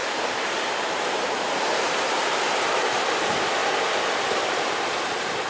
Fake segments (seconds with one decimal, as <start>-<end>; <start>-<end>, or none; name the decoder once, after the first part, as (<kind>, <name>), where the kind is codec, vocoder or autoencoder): 0.0-3.6 (vocoder, BigVGAN v2); 4.3-5.5